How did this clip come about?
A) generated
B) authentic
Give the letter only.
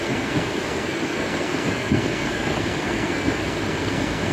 A